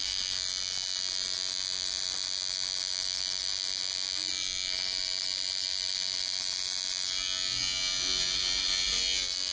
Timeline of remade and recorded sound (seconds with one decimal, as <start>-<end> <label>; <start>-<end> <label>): 0.0-9.5 recorded

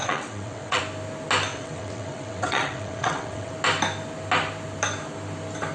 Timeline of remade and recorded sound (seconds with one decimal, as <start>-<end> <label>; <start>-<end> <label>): 0.0-0.8 remade; 0.8-1.5 recorded; 1.5-3.5 remade; 3.5-5.7 recorded

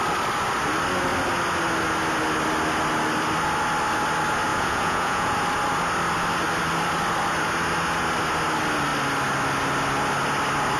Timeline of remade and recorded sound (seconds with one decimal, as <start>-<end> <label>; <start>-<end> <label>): 0.0-4.5 recorded; 4.5-5.3 remade; 5.3-10.8 recorded

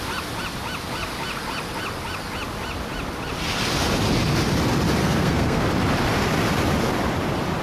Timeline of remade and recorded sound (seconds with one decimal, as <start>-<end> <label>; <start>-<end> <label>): 0.0-5.0 recorded; 5.0-5.6 remade; 5.6-7.6 recorded

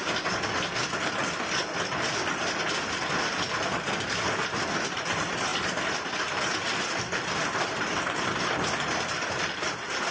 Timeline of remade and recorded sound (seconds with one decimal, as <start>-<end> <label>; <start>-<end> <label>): 0.0-10.1 recorded